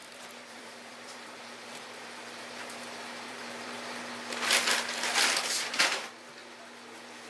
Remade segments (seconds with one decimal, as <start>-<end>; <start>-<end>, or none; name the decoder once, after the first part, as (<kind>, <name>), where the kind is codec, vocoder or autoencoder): 0.0-4.1 (vocoder, BigVGAN v2)